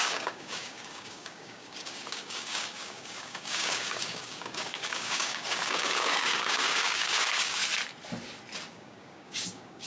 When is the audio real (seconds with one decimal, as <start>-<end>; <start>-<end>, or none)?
7.6-8.7